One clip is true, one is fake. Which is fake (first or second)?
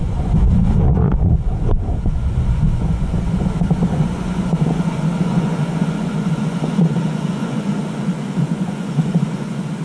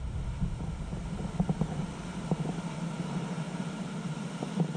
first